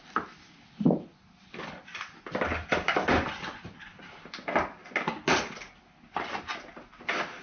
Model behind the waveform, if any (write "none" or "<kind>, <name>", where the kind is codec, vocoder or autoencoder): none